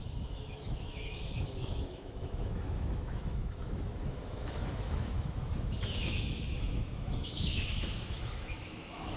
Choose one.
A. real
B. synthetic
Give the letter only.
B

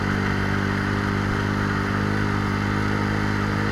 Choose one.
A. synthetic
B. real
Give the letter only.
B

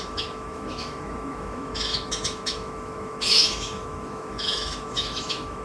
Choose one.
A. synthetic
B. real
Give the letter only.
A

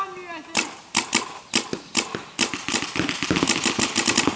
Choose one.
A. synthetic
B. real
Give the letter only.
B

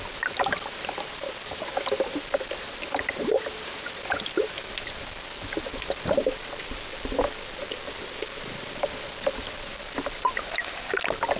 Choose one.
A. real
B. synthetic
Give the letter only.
A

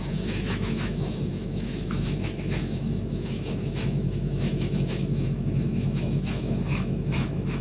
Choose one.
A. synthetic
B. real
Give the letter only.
A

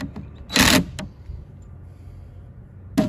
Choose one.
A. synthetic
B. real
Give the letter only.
B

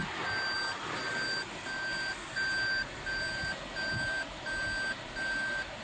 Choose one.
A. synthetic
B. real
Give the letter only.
B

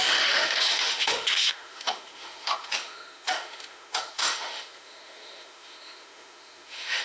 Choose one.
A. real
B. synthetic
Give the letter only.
B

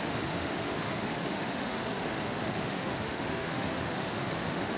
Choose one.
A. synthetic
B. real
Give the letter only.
A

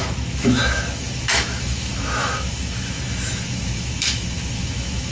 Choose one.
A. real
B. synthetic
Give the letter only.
B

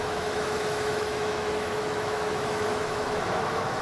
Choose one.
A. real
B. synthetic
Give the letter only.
B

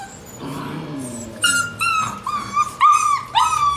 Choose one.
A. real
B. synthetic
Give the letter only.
A